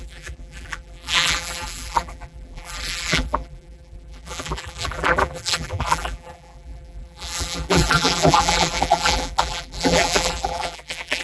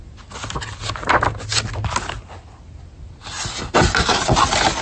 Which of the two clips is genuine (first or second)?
second